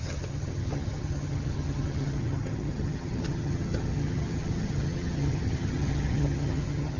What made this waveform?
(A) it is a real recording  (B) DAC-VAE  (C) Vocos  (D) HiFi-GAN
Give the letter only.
D